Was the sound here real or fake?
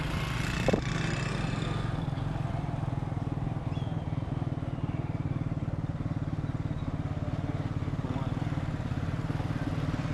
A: real